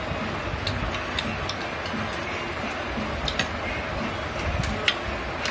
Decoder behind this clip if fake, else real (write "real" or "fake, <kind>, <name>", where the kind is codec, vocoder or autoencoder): real